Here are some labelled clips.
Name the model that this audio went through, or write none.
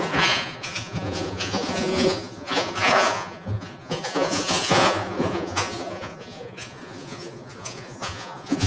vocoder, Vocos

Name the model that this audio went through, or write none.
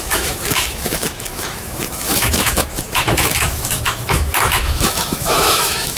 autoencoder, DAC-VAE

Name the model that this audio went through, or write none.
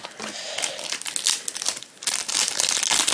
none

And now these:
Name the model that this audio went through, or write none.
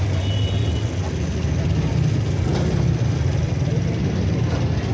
none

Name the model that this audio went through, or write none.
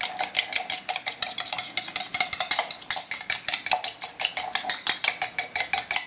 none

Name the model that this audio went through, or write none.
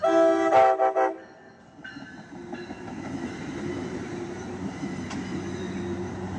none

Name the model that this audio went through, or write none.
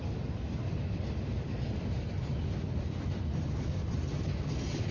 none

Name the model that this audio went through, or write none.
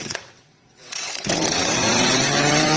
vocoder, WaveNeXt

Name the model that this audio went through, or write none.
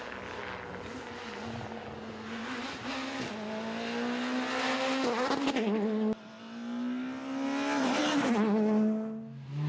none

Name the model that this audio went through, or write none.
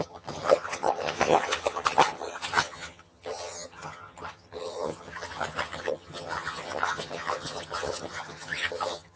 vocoder, HiFi-GAN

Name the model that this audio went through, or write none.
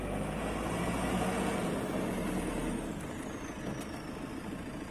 none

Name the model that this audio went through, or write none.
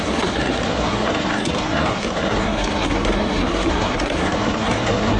codec, SNAC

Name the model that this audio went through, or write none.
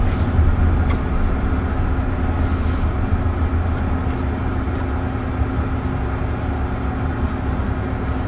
none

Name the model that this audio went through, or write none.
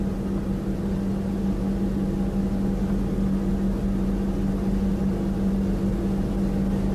none